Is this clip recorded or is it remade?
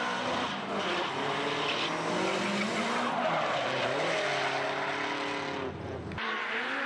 recorded